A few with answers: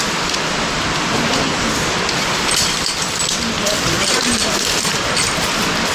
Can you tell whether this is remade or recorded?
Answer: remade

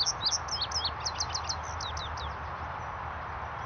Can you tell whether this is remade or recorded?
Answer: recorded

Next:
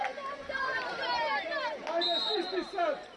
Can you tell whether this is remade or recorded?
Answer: remade